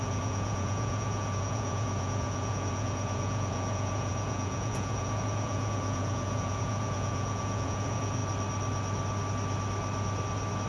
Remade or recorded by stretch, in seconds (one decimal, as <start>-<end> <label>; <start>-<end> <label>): 0.0-8.2 remade; 8.2-10.7 recorded